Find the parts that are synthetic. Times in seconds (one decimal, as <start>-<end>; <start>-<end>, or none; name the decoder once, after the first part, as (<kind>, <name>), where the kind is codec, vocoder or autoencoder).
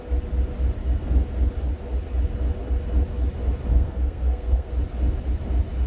3.7-4.7 (codec, SNAC)